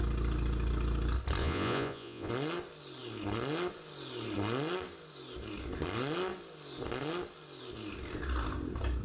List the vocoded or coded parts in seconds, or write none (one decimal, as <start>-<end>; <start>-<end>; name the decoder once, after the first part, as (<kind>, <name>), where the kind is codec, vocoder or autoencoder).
1.4-2.3 (vocoder, Vocos)